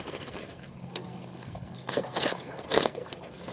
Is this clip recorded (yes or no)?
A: no